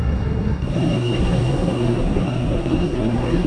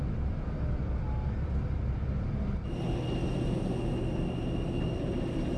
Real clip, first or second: second